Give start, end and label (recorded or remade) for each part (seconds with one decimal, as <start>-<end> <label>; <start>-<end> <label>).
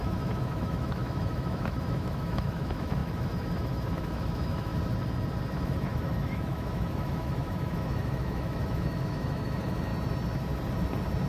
0.0-4.7 remade; 4.7-5.5 recorded; 5.5-9.9 remade; 9.9-11.3 recorded